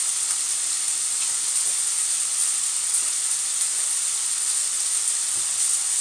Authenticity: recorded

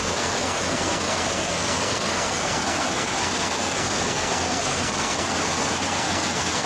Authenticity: remade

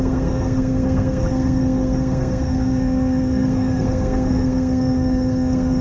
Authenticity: remade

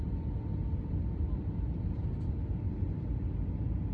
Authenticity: recorded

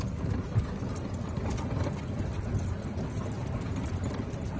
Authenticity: recorded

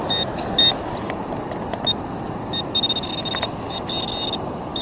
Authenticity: recorded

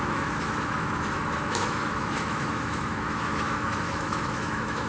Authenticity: remade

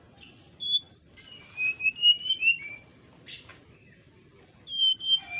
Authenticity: remade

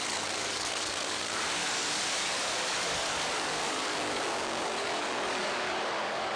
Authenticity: remade